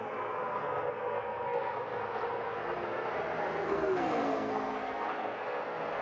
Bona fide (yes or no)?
no